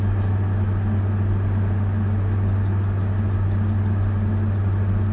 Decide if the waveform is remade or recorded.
recorded